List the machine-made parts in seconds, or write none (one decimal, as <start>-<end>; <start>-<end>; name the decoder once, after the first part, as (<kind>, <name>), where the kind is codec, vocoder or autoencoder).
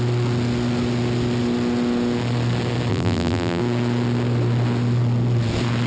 2.9-3.6 (vocoder, BigVGAN v2)